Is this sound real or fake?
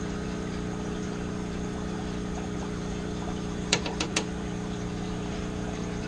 fake